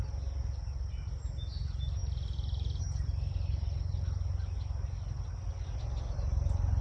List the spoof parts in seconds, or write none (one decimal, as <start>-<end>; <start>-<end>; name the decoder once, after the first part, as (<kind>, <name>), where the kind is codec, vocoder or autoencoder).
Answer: none